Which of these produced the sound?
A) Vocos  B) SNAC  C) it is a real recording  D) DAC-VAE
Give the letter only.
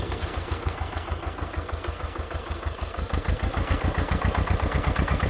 B